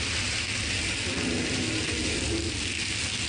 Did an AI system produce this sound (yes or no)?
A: no